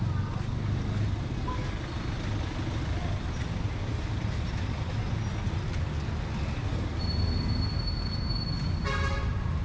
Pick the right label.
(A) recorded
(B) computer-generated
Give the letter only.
A